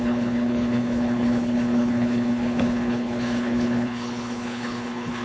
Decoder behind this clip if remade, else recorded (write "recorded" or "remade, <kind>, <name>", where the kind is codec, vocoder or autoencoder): remade, codec, HILCodec